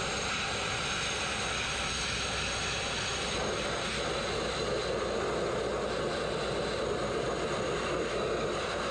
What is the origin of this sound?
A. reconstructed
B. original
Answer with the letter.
B